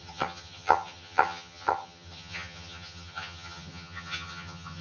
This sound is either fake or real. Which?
fake